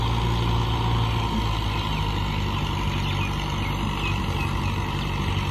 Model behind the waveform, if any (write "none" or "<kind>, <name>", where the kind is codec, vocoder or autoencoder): none